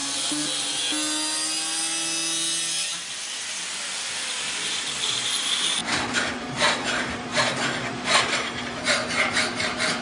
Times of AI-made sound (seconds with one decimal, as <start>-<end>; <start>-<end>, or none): 4.1-7.3; 7.9-10.0